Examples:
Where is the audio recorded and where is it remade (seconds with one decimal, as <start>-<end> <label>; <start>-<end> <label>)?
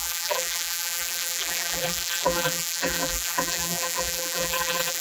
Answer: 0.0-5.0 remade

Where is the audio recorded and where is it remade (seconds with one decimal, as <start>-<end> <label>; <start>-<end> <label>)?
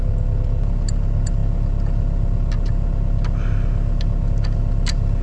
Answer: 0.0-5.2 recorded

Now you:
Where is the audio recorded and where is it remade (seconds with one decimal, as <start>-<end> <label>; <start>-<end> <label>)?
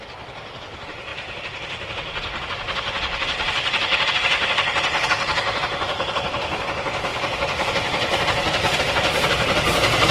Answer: 0.0-1.1 recorded; 1.1-4.1 remade; 4.1-7.1 recorded; 7.1-8.8 remade; 8.8-10.1 recorded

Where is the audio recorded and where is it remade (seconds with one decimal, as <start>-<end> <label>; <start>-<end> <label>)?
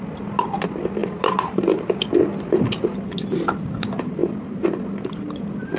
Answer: 0.0-1.0 recorded; 1.0-1.7 remade; 1.7-4.2 recorded; 4.2-4.7 remade; 4.7-5.8 recorded